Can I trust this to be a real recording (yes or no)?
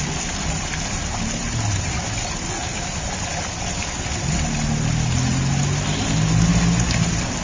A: yes